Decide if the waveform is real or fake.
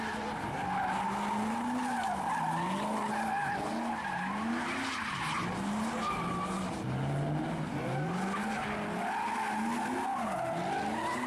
real